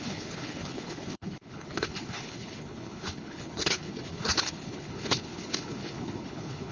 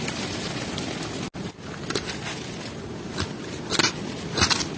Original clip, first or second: second